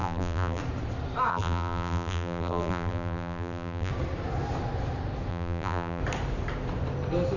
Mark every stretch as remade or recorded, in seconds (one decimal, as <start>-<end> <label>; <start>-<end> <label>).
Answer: 0.0-0.6 remade; 0.6-1.3 recorded; 1.3-3.9 remade; 3.9-5.3 recorded; 5.3-6.0 remade; 6.0-7.4 recorded